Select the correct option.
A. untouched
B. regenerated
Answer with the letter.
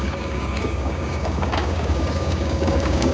B